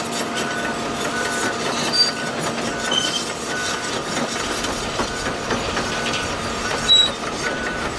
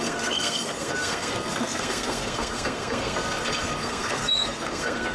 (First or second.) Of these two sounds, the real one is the first